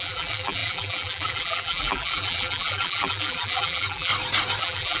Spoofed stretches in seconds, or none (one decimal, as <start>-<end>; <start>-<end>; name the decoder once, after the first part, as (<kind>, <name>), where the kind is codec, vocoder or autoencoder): 0.0-4.1 (vocoder, BigVGAN v2); 4.6-5.0